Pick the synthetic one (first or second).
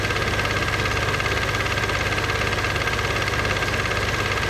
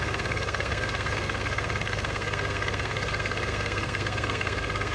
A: second